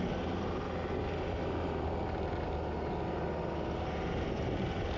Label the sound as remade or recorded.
recorded